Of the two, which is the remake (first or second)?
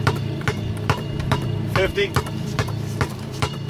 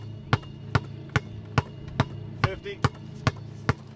first